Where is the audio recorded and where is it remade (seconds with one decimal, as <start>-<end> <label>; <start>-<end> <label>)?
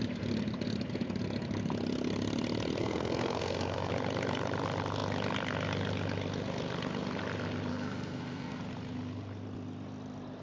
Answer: 0.0-2.8 recorded; 2.8-3.9 remade; 3.9-7.7 recorded; 7.7-8.6 remade; 8.6-10.4 recorded